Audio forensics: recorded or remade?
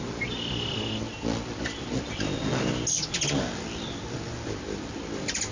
recorded